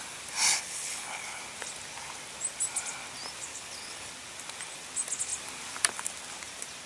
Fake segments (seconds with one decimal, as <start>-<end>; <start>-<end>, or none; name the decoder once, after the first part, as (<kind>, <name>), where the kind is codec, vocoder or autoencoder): 0.5-1.4 (codec, HILCodec); 3.5-4.1